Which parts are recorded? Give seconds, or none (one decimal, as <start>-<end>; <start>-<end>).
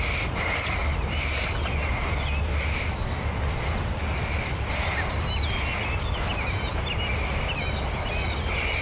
6.7-7.8